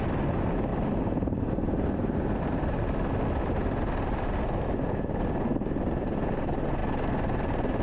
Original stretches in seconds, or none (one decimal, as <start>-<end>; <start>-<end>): 0.0-7.8